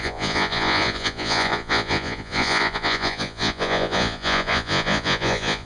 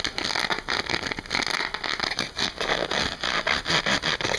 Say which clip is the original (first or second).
second